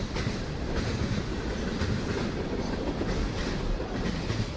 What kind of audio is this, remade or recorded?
remade